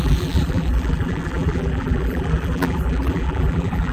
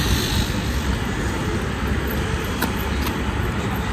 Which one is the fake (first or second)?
first